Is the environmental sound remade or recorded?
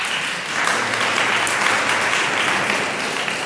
recorded